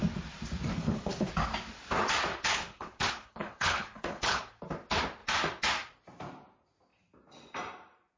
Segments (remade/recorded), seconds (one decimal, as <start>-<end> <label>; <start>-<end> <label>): 0.0-0.7 recorded; 0.7-1.3 remade; 1.3-2.5 recorded; 2.5-4.5 remade; 4.5-8.2 recorded